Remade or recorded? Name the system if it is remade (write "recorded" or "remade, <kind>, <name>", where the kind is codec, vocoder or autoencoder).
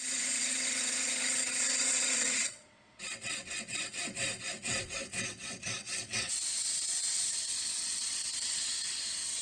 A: remade, vocoder, WaveNeXt